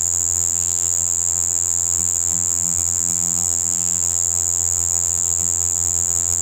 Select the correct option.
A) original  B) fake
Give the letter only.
B